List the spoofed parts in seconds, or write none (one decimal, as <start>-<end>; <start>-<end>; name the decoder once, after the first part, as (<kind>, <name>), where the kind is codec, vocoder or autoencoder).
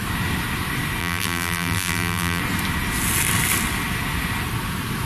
1.0-2.4 (vocoder, BigVGAN v2)